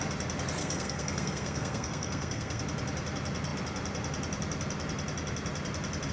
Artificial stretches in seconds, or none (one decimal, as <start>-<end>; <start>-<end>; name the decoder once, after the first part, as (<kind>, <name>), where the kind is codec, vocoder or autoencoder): 0.6-2.6 (codec, SNAC)